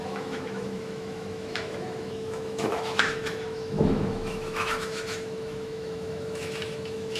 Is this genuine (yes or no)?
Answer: no